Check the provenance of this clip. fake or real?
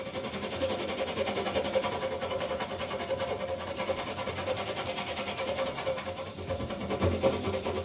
fake